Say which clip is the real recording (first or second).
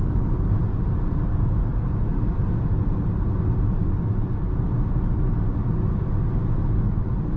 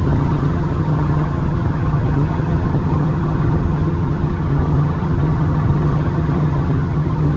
first